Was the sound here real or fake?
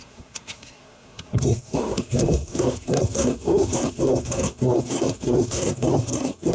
fake